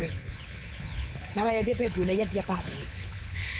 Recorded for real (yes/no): no